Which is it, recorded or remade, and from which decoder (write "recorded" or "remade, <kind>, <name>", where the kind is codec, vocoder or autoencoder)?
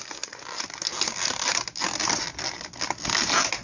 recorded